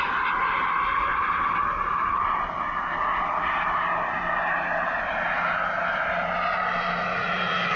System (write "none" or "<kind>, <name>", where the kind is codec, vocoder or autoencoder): none